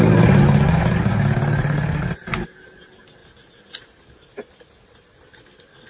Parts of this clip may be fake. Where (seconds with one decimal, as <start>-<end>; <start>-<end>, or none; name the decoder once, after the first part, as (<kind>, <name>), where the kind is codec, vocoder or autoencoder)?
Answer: none